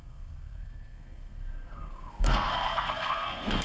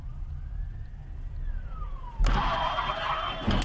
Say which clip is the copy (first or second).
first